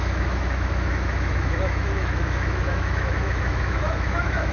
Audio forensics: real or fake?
fake